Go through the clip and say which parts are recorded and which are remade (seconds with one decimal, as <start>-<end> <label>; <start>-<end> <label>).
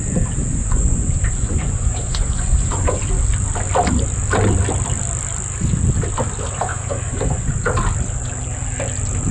0.0-0.6 recorded; 0.6-3.0 remade; 3.0-6.7 recorded; 6.7-7.5 remade; 7.5-9.3 recorded